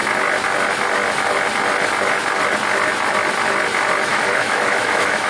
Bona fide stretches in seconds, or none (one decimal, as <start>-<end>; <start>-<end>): 0.0-4.1